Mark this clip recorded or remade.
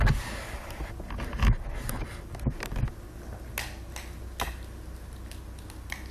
recorded